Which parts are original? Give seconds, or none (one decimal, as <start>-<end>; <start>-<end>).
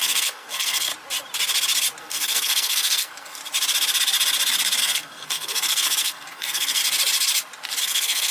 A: 0.9-2.0; 3.4-4.8; 6.8-7.8